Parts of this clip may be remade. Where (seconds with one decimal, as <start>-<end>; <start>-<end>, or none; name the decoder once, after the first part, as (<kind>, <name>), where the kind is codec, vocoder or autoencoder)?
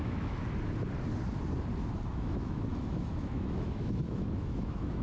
0.0-0.4 (autoencoder, DAC-VAE); 2.1-5.0